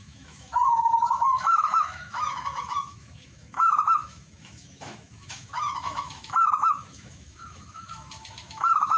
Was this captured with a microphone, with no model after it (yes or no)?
no